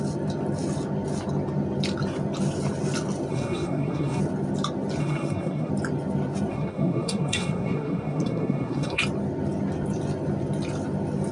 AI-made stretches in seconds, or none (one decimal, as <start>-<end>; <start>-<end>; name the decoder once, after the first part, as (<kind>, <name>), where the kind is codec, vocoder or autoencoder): 3.3-4.2 (codec, SNAC); 5.0-5.7; 6.5-9.0